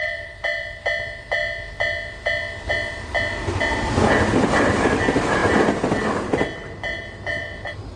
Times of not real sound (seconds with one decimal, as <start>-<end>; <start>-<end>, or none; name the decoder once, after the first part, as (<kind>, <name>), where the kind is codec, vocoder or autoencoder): 0.0-0.8 (vocoder, BigVGAN v2)